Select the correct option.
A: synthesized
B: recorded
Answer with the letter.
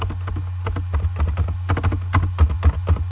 B